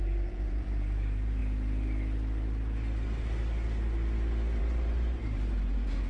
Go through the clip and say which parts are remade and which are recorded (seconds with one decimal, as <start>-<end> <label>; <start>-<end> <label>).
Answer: 0.0-1.4 remade; 1.4-4.6 recorded; 4.6-6.1 remade